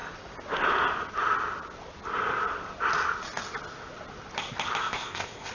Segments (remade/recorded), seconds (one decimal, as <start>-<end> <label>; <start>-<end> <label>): 0.0-4.8 recorded; 4.8-5.5 remade